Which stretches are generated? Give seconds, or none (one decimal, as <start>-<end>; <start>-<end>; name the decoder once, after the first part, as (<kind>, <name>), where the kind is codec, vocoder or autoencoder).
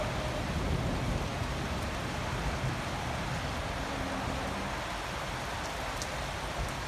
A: none